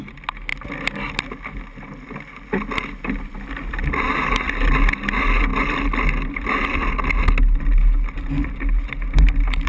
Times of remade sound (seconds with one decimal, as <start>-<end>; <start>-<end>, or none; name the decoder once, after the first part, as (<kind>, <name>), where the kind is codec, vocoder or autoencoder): none